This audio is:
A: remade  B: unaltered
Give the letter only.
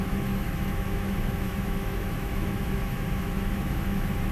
A